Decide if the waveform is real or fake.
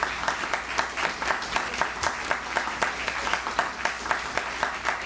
real